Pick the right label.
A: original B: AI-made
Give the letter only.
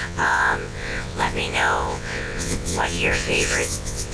B